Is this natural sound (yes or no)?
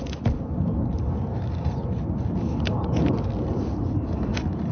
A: yes